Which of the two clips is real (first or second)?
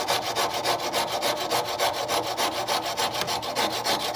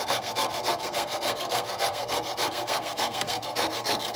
first